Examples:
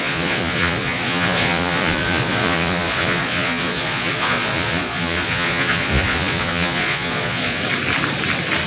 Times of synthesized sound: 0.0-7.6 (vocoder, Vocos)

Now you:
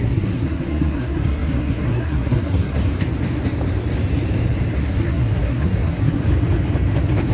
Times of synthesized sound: 0.0-2.8 (codec, SNAC); 4.8-6.2

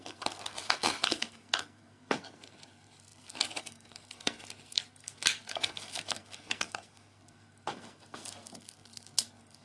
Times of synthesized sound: 0.0-9.6 (codec, SNAC)